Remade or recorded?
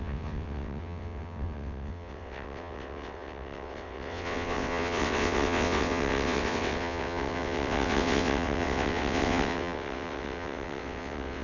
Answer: remade